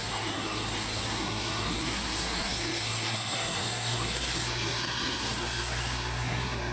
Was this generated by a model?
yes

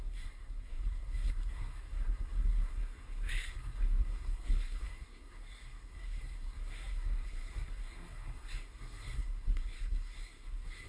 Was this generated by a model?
yes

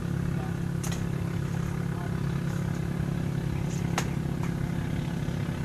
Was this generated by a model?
no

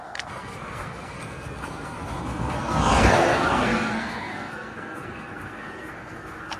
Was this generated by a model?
yes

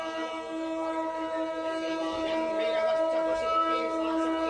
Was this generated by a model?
no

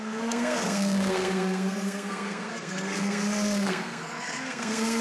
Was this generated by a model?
yes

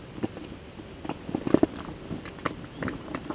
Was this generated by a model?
no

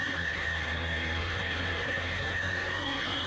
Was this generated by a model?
yes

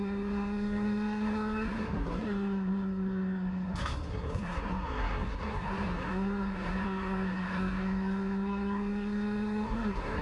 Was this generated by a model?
yes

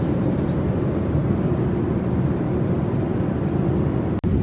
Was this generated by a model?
no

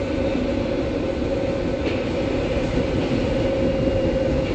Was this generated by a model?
no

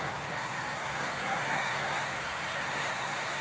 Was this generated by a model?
yes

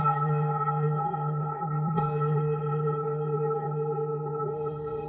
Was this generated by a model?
yes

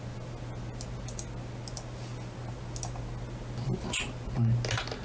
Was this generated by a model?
no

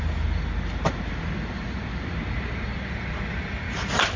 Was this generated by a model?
no